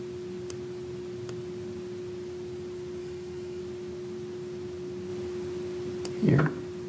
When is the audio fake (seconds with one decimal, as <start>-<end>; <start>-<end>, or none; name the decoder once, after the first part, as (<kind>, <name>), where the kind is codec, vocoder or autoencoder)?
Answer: 3.0-3.6 (codec, DAC)